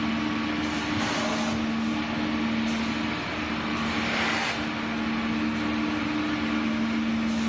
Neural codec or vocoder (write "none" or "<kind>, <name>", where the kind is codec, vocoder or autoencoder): none